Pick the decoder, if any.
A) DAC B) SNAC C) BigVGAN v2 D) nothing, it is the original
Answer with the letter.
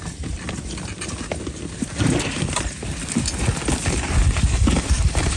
D